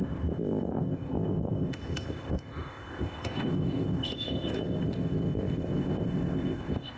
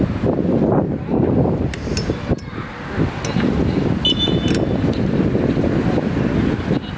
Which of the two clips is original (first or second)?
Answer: second